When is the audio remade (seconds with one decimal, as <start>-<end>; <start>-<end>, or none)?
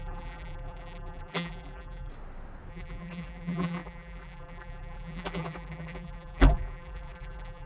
0.0-2.1; 2.7-7.7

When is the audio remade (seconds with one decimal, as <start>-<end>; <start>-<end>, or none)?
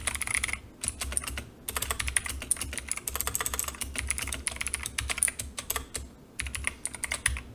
none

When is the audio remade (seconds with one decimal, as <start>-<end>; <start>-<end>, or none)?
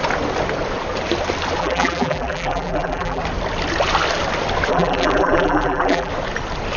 1.6-3.2; 4.7-6.1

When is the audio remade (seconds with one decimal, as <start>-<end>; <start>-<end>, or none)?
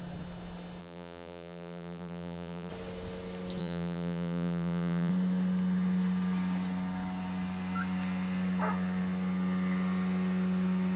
0.8-2.7; 3.6-5.1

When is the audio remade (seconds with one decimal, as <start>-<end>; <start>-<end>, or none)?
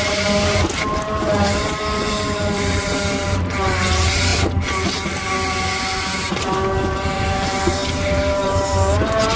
0.0-4.3; 6.3-9.4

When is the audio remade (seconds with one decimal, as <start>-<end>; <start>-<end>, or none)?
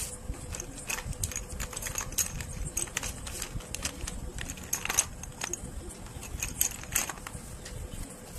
none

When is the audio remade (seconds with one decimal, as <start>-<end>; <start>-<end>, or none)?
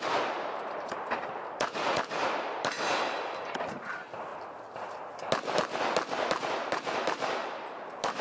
0.0-4.3; 6.4-8.2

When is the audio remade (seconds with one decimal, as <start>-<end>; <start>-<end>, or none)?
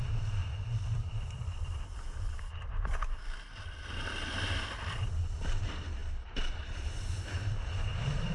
0.4-4.7